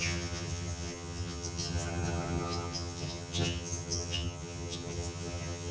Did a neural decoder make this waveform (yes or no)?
yes